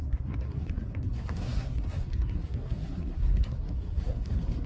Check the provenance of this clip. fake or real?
fake